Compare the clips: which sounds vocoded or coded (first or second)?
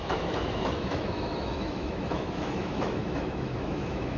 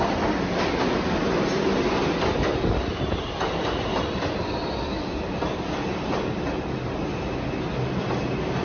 first